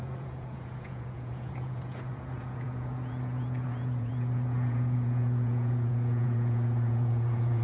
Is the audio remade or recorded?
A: remade